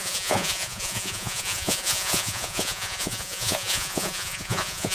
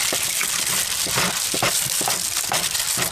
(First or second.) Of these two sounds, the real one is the second